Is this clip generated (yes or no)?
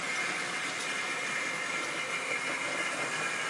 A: no